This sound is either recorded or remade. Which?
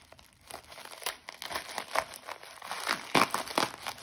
recorded